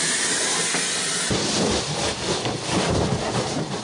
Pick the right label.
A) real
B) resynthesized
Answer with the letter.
B